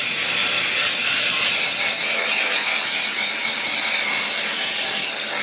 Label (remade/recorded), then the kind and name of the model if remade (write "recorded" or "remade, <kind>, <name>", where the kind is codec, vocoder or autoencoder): recorded